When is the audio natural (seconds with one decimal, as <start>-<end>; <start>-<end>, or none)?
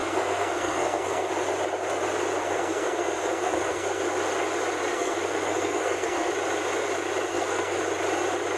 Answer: 1.3-2.4; 4.0-4.9; 6.3-7.3; 7.8-8.6